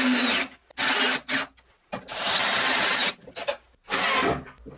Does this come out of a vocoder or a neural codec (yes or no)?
no